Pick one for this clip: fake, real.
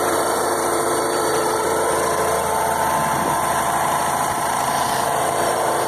fake